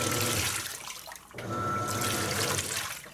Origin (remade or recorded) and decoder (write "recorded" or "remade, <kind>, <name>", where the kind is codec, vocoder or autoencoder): recorded